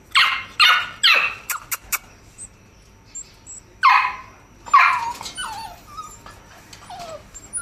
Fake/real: real